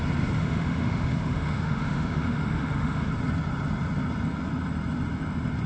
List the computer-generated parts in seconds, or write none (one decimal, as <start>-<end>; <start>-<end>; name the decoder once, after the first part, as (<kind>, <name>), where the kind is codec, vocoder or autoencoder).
0.4-3.1 (autoencoder, DAC-VAE)